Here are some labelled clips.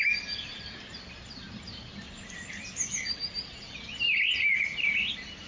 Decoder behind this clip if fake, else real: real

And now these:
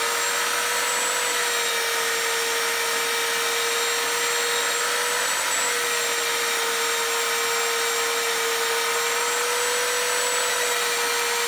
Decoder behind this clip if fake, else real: real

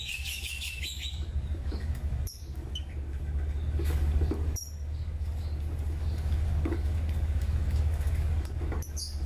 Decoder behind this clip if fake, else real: fake, codec, DAC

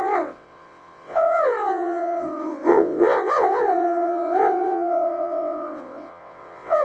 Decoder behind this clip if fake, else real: fake, vocoder, WaveNeXt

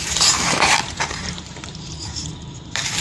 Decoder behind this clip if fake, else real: fake, vocoder, BigVGAN v2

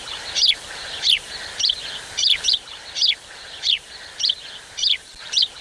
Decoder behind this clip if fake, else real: fake, vocoder, BigVGAN v2